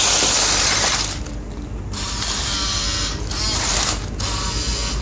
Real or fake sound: real